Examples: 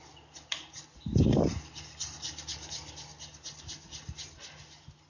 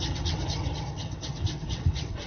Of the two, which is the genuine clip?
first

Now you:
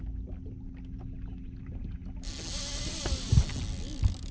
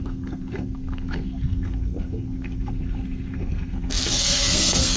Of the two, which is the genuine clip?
first